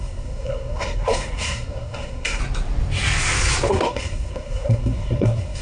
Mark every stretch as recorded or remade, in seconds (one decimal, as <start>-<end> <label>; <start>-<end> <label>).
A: 0.0-2.4 remade; 2.4-3.7 recorded; 3.7-5.6 remade